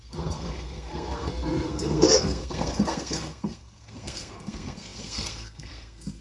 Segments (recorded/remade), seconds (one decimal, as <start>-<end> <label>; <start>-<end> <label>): 0.0-6.2 remade